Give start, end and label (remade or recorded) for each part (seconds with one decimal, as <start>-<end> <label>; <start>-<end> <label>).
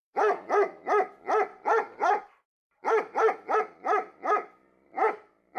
0.0-1.5 recorded; 1.5-3.6 remade; 3.6-4.6 recorded; 4.6-5.6 remade